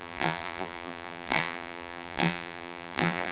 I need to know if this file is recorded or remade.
remade